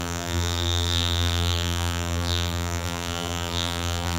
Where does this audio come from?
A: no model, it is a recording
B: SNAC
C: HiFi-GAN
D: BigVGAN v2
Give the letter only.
D